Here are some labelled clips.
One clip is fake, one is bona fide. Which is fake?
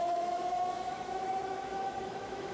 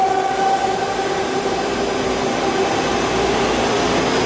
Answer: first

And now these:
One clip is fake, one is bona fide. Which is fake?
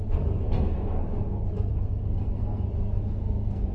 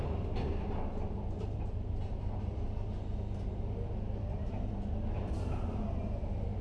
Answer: first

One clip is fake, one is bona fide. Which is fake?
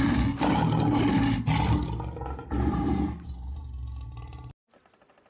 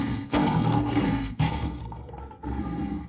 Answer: second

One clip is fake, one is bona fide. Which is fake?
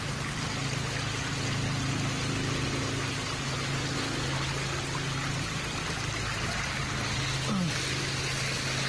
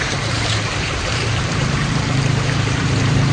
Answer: second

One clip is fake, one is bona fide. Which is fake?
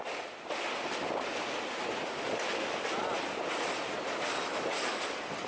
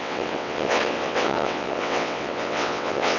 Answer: second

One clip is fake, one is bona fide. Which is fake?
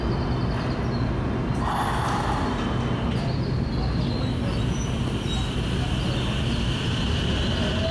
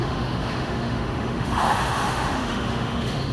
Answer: second